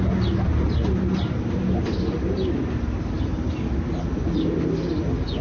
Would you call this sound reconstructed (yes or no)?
no